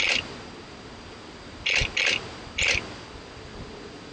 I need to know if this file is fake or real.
real